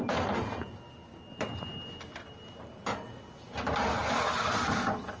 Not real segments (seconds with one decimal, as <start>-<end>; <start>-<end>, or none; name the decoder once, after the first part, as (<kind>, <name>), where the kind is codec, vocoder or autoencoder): none